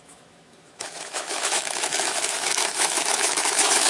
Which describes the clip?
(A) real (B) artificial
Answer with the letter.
B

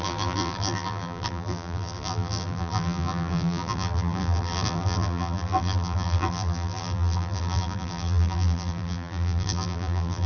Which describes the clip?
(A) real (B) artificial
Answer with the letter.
B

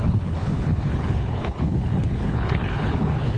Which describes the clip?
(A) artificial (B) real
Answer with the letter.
A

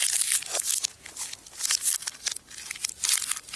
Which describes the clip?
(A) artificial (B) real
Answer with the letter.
B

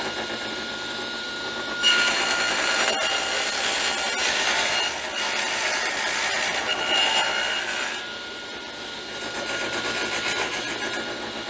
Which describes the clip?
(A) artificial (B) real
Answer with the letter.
B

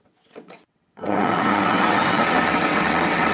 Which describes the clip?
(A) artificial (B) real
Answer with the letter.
A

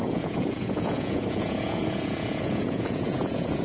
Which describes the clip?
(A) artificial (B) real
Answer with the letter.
A